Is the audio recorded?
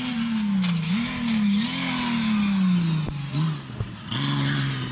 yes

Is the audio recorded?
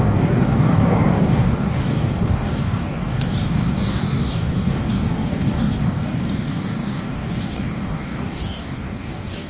no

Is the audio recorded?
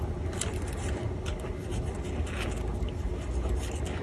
yes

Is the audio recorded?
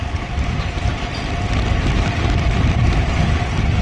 yes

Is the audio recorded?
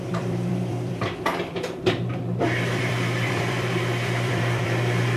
no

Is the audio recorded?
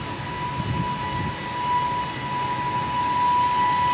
yes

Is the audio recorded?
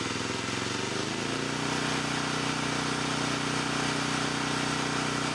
yes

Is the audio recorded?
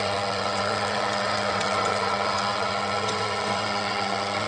no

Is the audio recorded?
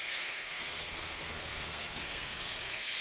no